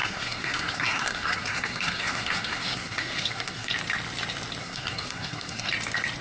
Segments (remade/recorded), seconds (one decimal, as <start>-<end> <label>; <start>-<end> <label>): 0.0-3.7 remade; 3.7-4.6 recorded; 4.6-5.7 remade; 5.7-6.2 recorded